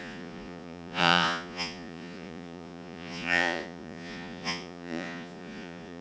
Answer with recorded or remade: remade